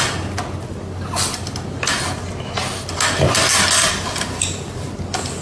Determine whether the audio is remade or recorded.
recorded